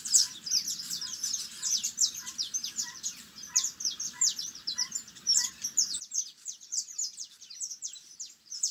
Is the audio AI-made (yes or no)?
yes